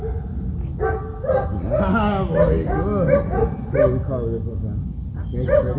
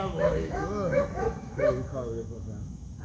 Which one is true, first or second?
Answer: first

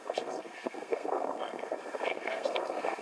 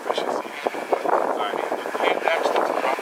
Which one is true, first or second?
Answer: second